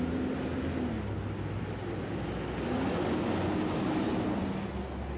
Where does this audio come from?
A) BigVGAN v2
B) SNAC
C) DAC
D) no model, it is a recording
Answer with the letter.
D